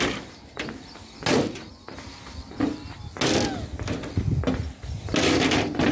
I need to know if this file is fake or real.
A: real